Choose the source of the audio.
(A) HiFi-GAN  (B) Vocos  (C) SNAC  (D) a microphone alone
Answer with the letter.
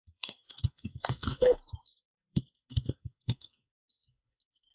C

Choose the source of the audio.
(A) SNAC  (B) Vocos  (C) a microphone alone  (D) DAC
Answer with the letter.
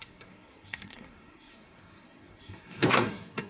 A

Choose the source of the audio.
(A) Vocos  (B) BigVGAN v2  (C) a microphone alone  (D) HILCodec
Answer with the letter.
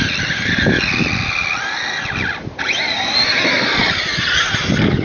C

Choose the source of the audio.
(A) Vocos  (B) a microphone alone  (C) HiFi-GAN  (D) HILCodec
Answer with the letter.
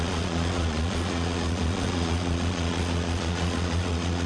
A